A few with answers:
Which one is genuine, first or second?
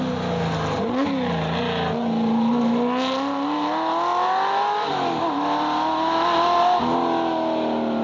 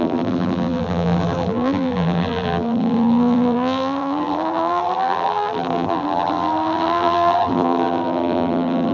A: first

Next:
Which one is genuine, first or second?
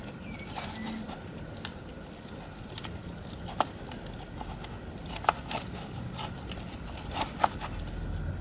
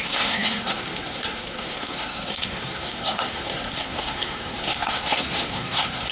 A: first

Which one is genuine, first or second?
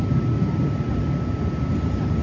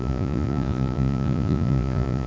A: first